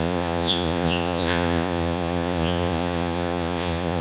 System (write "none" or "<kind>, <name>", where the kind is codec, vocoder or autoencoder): vocoder, Vocos